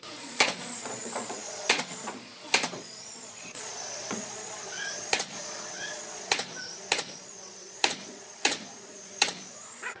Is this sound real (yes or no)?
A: no